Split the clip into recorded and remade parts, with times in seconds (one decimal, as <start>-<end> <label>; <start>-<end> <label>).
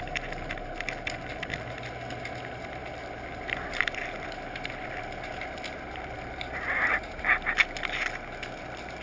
0.0-2.8 recorded; 2.8-7.5 remade; 7.5-9.0 recorded